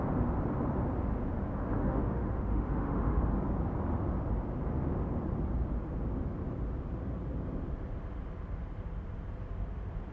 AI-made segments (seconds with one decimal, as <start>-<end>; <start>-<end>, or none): 1.8-3.2